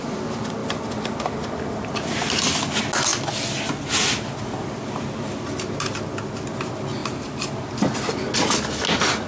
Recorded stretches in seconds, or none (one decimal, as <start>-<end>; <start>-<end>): 0.0-0.6; 1.2-7.0; 7.6-9.3